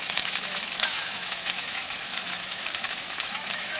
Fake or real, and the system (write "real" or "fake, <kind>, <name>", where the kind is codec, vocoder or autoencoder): fake, autoencoder, DAC-VAE